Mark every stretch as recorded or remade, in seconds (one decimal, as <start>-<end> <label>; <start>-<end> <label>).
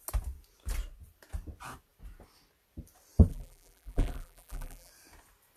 0.0-3.3 recorded; 3.3-4.9 remade; 4.9-5.6 recorded